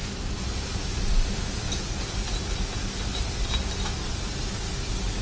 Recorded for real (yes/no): no